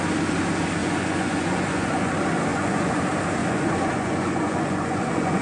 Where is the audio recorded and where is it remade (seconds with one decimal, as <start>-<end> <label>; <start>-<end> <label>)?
0.0-0.8 recorded; 0.8-2.1 remade; 2.1-2.5 recorded; 2.5-3.0 remade; 3.0-3.4 recorded; 3.4-5.4 remade